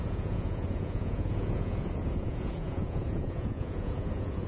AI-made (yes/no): yes